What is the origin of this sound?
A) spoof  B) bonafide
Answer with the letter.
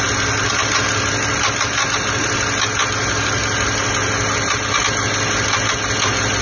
B